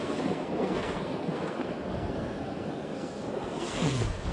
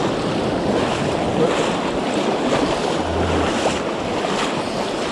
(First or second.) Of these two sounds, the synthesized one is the first